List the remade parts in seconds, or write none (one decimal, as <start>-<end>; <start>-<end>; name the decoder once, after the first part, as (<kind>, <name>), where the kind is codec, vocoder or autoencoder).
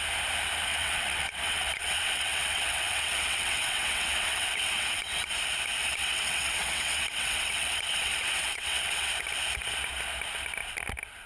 0.7-5.3 (vocoder, WaveNeXt); 5.8-9.1